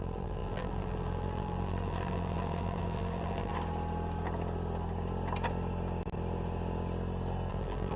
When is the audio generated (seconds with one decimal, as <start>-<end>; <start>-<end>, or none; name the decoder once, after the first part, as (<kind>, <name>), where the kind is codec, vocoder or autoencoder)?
0.0-3.5 (vocoder, BigVGAN v2); 7.5-8.0